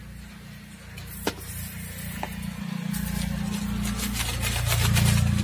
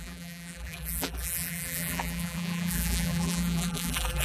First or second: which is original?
first